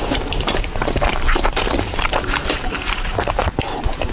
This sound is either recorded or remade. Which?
remade